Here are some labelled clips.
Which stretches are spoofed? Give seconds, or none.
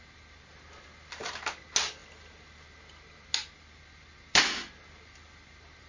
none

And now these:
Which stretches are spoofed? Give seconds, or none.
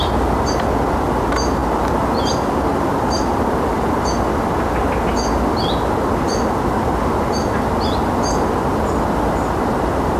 none